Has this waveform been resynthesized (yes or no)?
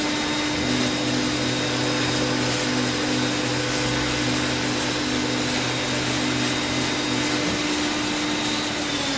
no